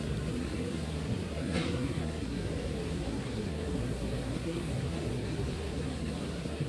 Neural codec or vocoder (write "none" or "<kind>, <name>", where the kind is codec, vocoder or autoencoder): codec, SNAC